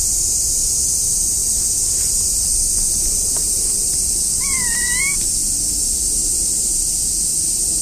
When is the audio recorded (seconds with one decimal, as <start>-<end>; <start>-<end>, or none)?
5.4-6.4; 7.3-7.8